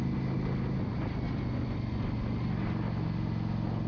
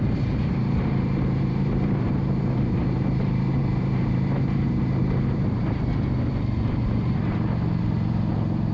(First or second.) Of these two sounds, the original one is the first